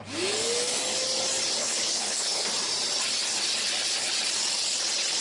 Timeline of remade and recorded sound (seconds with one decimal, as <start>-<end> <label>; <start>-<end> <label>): 0.0-1.6 recorded; 1.6-2.5 remade; 2.5-5.2 recorded